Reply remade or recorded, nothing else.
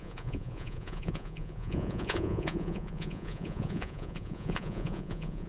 remade